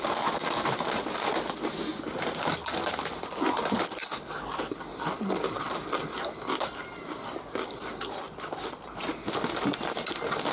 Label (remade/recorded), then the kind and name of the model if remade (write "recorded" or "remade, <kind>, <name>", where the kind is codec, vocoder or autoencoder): recorded